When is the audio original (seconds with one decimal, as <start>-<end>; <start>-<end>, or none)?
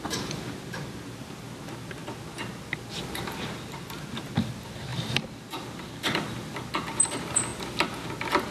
0.0-8.5